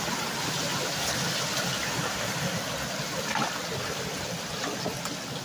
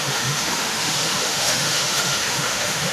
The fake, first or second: second